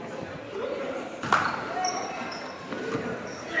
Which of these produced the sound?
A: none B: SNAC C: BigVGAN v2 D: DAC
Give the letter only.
C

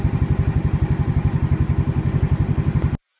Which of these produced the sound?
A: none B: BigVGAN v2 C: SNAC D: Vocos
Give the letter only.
A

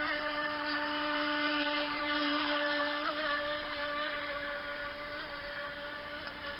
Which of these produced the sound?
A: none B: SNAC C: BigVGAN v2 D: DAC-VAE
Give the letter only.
C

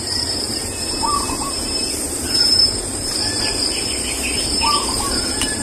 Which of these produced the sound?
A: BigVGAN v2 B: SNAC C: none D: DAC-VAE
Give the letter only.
A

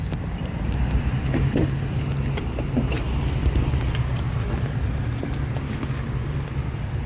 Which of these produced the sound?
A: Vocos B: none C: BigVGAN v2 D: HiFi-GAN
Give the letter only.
B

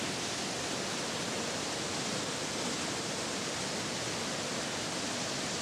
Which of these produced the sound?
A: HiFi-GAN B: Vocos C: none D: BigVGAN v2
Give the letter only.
C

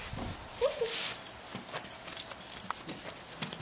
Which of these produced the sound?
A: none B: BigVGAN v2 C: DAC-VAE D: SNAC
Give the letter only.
A